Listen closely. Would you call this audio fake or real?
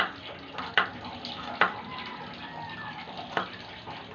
real